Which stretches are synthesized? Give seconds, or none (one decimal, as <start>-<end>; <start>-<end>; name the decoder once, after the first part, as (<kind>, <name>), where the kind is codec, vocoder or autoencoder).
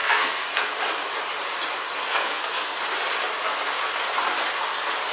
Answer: 0.0-0.7 (codec, SNAC); 2.0-2.8